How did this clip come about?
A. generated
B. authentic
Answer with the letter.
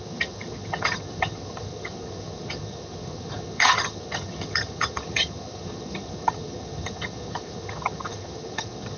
A